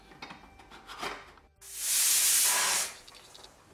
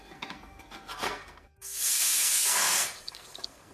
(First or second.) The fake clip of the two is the second